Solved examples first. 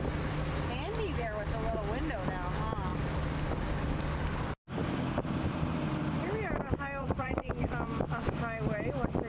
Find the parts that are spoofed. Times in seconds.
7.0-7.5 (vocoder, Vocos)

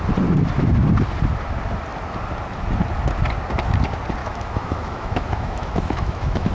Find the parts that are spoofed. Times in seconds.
4.2-6.5 (autoencoder, DAC-VAE)

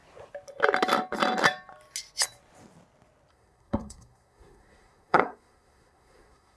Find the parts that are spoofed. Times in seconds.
3.3-6.6 (codec, SNAC)

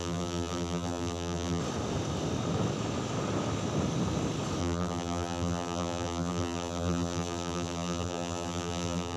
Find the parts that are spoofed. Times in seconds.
0.0-1.6 (vocoder, BigVGAN v2); 4.6-9.2

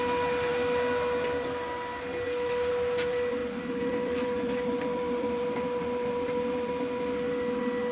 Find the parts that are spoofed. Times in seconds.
3.4-6.7 (vocoder, BigVGAN v2)

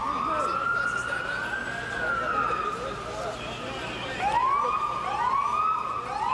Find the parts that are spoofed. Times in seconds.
none

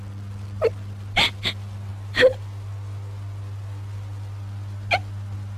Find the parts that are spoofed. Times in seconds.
none